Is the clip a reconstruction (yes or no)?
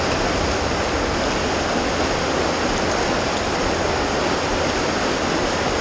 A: no